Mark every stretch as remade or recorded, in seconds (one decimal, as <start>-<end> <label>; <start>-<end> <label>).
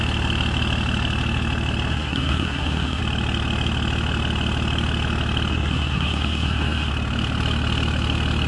0.0-1.9 recorded; 1.9-3.0 remade; 3.0-5.5 recorded; 5.5-6.9 remade; 6.9-8.5 recorded